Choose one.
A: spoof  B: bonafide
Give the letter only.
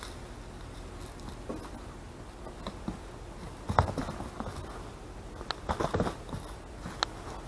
B